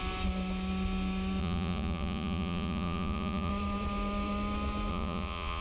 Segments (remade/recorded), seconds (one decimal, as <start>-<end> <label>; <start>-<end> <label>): 0.0-1.4 recorded; 1.4-3.5 remade; 3.5-4.9 recorded; 4.9-5.6 remade

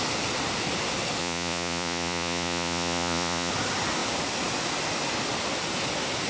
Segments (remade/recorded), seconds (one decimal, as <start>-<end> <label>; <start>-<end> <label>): 0.0-1.2 recorded; 1.2-3.5 remade; 3.5-6.3 recorded